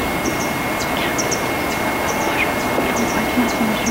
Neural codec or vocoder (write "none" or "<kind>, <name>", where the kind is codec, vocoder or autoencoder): none